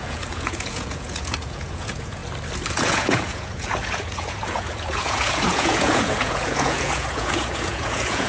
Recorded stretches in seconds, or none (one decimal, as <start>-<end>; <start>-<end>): 2.2-2.7